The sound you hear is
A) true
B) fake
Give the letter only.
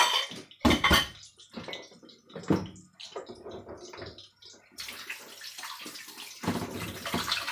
A